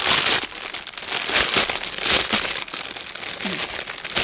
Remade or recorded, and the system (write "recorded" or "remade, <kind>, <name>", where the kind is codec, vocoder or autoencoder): recorded